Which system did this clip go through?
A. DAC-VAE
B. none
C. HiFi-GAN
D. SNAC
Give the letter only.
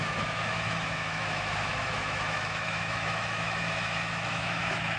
A